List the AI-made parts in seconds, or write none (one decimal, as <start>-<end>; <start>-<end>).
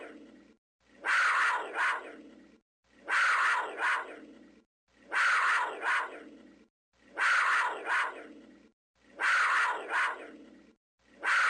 none